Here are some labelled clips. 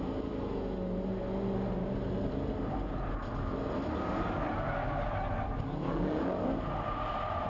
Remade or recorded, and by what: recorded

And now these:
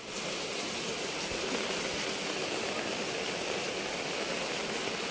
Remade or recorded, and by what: recorded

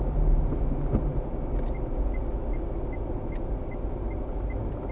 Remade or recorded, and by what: recorded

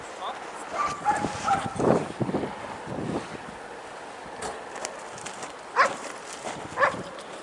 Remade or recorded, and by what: recorded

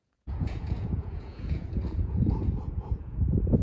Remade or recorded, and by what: remade, vocoder, Vocos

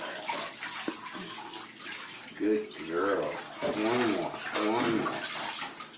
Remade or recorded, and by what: recorded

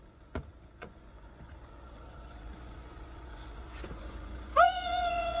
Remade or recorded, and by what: remade, vocoder, Vocos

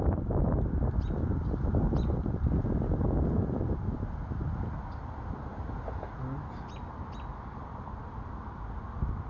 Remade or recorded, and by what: recorded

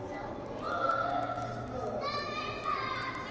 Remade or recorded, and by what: recorded